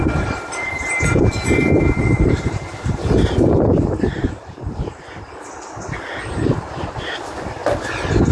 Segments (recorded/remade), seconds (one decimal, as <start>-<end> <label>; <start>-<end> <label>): 0.0-7.6 remade; 7.6-8.3 recorded